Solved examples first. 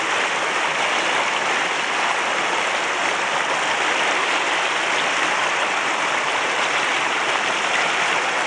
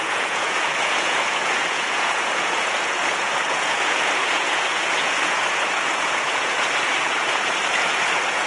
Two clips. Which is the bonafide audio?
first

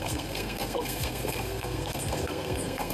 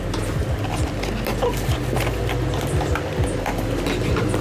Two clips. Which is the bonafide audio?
second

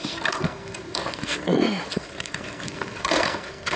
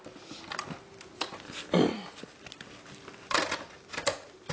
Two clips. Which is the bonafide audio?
second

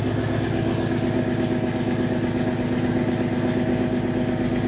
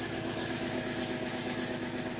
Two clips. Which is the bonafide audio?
first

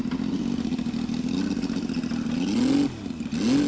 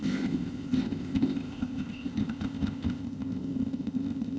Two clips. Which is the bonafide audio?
first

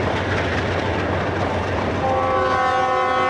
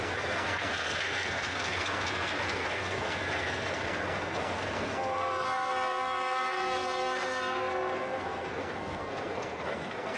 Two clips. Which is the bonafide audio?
first